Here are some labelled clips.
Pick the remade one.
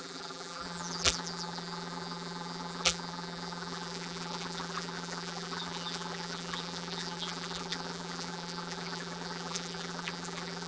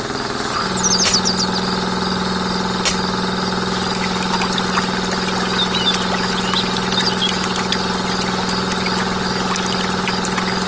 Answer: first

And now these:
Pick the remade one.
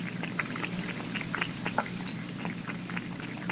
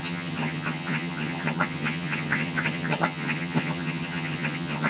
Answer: second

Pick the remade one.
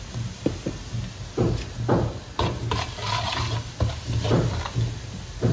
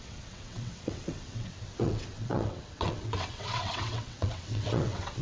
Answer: second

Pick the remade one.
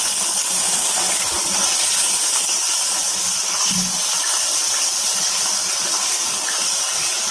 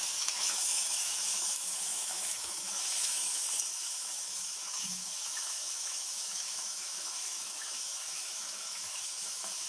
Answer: second